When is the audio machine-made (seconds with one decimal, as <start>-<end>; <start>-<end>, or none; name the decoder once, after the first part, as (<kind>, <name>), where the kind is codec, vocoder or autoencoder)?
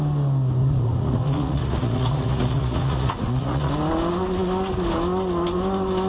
0.6-3.7 (vocoder, Vocos)